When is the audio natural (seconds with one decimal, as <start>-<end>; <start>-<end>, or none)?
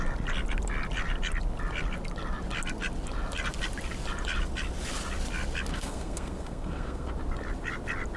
0.0-5.7; 7.1-8.2